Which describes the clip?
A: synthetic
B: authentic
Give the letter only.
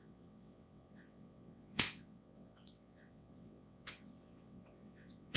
A